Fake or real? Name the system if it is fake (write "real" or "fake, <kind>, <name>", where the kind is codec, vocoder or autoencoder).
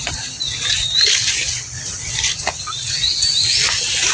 real